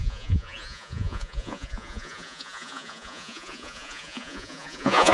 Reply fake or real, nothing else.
fake